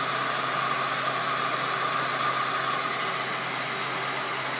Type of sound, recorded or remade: recorded